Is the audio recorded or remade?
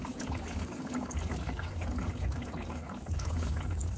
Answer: remade